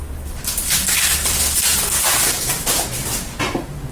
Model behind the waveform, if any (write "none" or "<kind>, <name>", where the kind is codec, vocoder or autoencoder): none